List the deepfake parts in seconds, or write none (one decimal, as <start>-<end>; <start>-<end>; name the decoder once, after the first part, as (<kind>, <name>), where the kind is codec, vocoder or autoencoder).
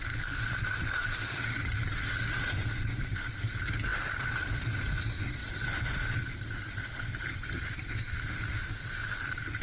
1.0-1.6 (vocoder, BigVGAN v2); 5.4-6.2